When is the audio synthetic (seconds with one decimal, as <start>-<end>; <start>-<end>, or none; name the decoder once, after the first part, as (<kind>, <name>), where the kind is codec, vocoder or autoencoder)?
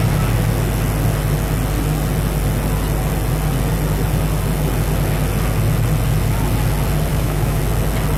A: 7.1-7.6 (autoencoder, DAC-VAE)